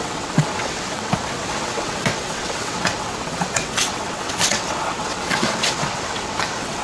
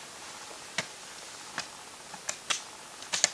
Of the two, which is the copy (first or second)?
first